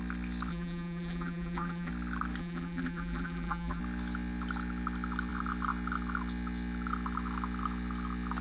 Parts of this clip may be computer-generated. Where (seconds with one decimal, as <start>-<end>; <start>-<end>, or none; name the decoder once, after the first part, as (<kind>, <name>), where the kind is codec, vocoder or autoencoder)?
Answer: 0.5-1.9 (vocoder, BigVGAN v2); 2.4-3.8